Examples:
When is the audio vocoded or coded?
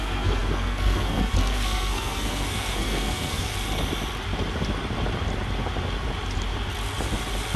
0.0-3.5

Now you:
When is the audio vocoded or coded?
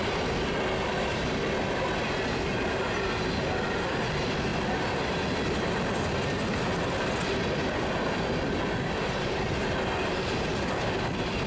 none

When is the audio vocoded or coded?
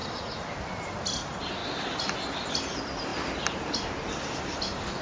none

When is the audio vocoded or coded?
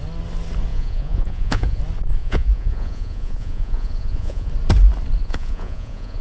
0.7-1.8; 2.2-4.5; 5.2-6.2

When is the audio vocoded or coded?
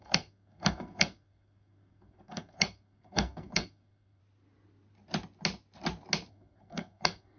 0.0-4.2; 6.3-7.4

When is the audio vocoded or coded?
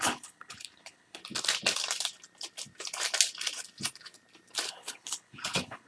0.0-1.2; 4.7-5.9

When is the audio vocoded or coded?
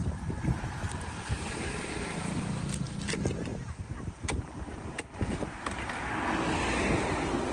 0.0-2.6; 3.5-5.6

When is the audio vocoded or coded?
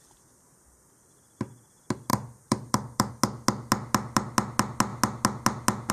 2.1-3.1